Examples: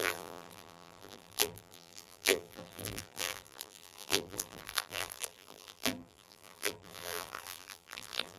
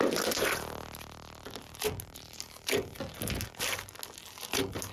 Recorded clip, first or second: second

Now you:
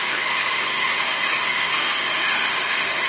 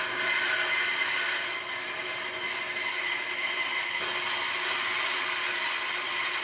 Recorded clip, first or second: second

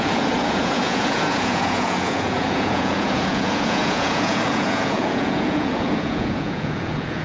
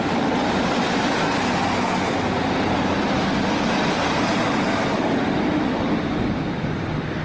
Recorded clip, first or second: second